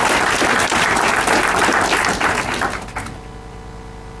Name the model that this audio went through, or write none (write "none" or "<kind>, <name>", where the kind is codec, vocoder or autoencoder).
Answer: none